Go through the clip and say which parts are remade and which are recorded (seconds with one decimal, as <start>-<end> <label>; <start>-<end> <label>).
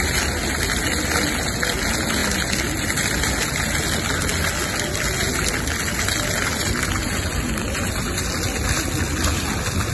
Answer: 0.0-9.9 recorded